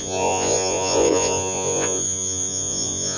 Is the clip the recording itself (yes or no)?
no